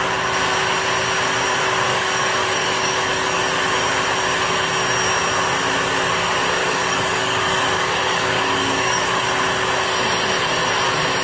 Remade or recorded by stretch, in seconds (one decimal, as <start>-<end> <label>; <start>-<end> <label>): 0.0-1.9 recorded; 1.9-3.4 remade; 3.4-6.6 recorded; 6.6-9.3 remade; 9.3-11.2 recorded